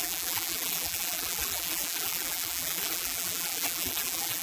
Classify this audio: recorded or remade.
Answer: remade